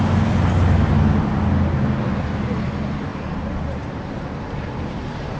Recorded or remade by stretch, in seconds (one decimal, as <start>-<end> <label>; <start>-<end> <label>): 0.0-5.4 recorded